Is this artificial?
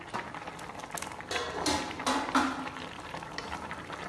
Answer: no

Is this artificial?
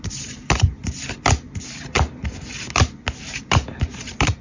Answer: no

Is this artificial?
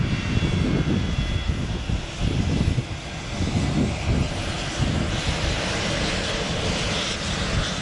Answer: no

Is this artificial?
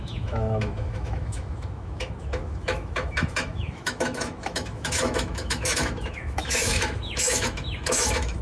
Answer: yes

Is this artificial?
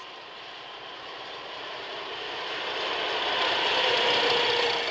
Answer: no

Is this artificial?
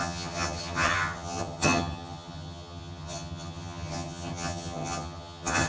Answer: yes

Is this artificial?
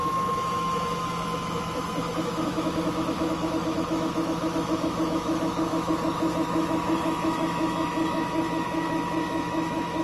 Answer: yes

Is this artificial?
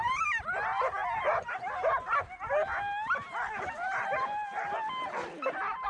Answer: no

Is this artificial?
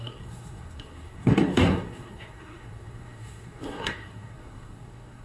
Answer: yes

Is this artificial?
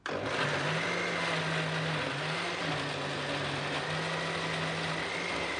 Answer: no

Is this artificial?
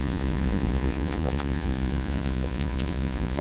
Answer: yes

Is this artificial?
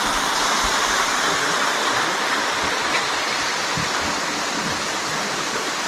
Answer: no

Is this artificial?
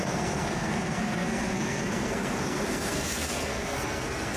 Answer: yes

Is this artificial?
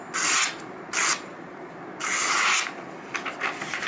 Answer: no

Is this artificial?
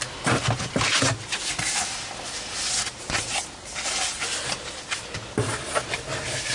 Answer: no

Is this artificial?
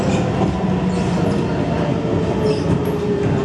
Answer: no